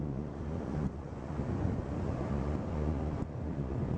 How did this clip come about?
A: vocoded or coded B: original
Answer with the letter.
A